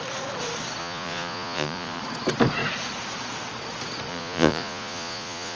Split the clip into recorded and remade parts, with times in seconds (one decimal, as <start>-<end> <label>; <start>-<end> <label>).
0.0-0.8 recorded; 0.8-2.0 remade; 2.0-4.1 recorded; 4.1-5.6 remade